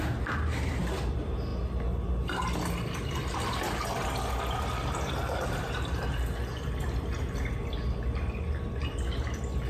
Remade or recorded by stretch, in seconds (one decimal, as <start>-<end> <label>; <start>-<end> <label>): 0.0-9.7 recorded